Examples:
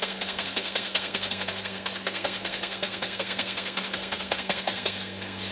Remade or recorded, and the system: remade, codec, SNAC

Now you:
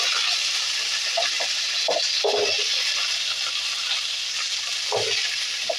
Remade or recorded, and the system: recorded